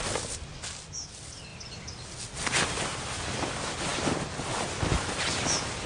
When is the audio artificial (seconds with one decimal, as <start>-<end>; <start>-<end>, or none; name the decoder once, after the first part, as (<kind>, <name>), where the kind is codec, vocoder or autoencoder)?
none